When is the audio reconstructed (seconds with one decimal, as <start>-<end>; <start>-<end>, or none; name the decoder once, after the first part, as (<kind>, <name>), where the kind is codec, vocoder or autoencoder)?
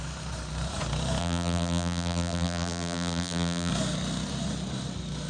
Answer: 1.2-3.7 (vocoder, BigVGAN v2)